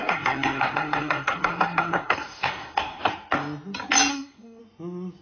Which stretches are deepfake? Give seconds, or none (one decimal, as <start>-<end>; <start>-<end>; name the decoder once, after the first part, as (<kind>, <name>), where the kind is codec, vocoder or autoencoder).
0.0-3.1 (codec, SNAC); 4.1-4.6